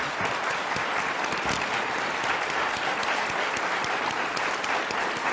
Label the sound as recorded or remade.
remade